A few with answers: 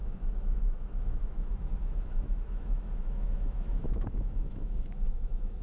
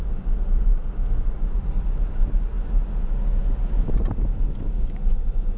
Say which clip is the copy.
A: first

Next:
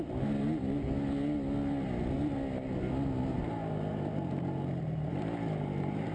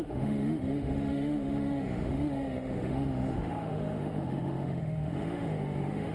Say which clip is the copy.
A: second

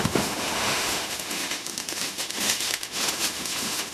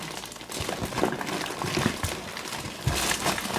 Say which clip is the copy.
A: first